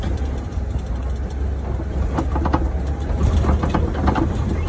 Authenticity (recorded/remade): recorded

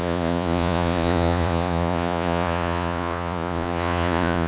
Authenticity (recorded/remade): remade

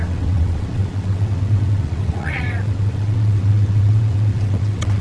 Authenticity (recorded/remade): remade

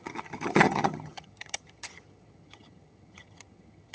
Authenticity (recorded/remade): remade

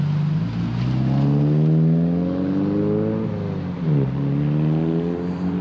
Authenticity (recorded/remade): recorded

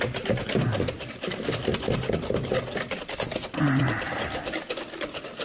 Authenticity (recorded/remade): recorded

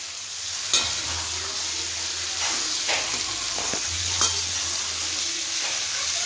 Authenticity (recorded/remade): recorded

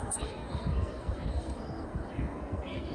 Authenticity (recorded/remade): remade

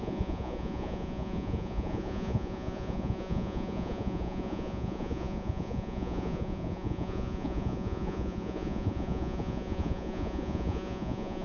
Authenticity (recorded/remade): remade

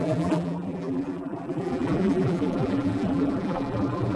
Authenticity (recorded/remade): remade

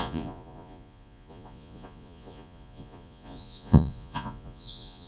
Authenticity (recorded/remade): remade